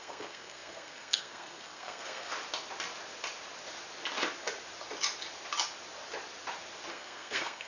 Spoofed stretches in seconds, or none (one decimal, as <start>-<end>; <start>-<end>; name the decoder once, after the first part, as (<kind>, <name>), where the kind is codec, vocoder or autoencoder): 0.0-2.3 (codec, SNAC); 6.9-7.7